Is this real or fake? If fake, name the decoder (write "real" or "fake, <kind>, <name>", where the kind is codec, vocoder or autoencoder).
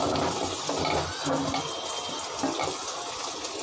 real